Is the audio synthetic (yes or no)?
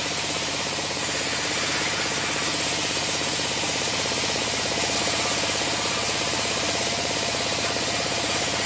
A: yes